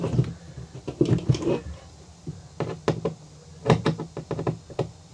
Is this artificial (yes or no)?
no